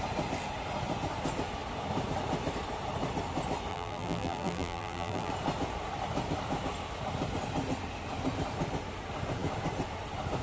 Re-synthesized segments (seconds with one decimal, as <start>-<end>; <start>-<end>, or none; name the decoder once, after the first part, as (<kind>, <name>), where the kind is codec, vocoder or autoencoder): 3.7-5.3 (vocoder, BigVGAN v2)